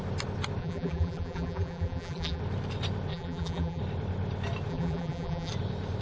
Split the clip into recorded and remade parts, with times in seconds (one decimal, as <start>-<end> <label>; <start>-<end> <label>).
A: 0.0-0.6 recorded; 0.6-2.4 remade; 2.4-3.1 recorded; 3.1-3.8 remade; 3.8-4.7 recorded; 4.7-5.5 remade; 5.5-6.0 recorded